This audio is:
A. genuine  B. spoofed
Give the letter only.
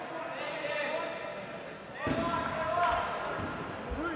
A